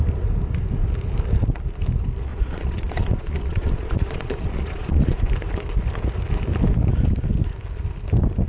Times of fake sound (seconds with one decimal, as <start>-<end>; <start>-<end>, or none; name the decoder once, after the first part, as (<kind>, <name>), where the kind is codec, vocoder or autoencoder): 2.3-5.3 (vocoder, Vocos)